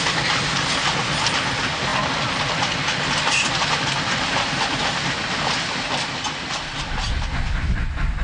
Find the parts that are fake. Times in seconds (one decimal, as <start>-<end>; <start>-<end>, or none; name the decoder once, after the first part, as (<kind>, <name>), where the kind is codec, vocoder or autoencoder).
none